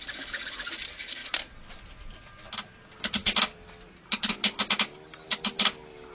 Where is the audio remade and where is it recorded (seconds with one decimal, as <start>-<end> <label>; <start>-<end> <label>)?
0.0-6.1 recorded